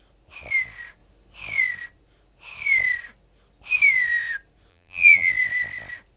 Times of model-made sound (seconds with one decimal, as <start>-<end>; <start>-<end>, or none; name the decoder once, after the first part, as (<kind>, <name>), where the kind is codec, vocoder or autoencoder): 4.7-5.3 (vocoder, BigVGAN v2)